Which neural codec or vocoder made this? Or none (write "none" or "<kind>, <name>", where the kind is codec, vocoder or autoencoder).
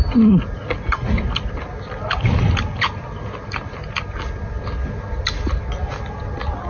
none